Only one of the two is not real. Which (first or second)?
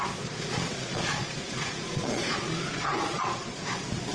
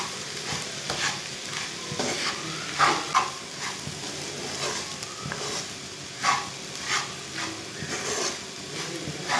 first